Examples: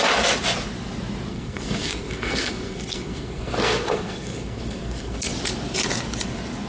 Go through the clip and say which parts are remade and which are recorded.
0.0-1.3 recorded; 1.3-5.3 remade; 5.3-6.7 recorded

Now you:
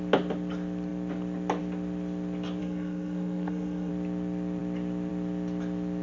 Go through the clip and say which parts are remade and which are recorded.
0.0-2.6 recorded; 2.6-3.9 remade; 3.9-6.0 recorded

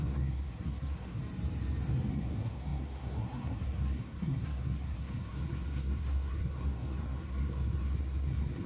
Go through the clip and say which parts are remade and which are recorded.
0.0-1.2 remade; 1.2-2.1 recorded; 2.1-8.7 remade

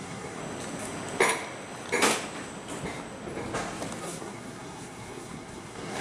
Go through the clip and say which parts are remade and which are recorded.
0.0-0.4 remade; 0.4-4.0 recorded; 4.0-6.0 remade

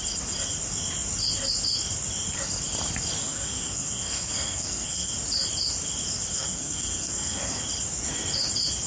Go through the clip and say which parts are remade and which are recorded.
0.0-3.2 recorded; 3.2-5.1 remade; 5.1-6.3 recorded; 6.3-7.6 remade; 7.6-8.9 recorded